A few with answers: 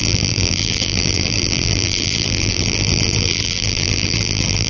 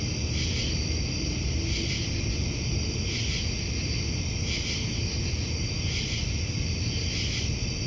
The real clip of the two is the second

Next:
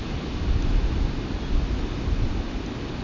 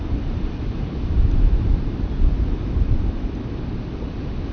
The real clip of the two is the first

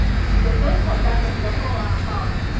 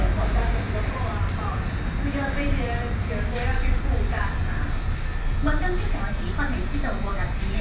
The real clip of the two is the first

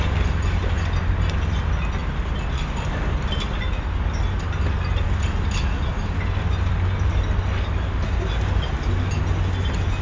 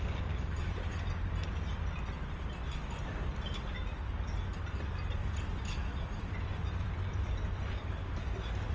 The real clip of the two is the first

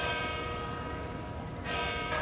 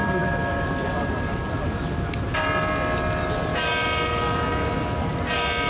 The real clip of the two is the second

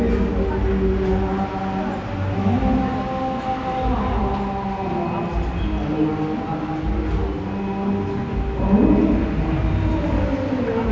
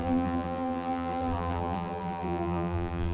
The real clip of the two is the first